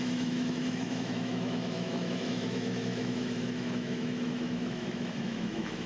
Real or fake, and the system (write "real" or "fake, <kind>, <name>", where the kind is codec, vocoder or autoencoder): fake, autoencoder, DAC-VAE